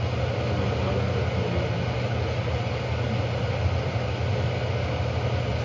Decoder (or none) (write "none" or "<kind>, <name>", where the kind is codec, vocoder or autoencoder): none